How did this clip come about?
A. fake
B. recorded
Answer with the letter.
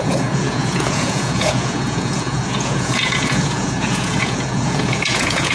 A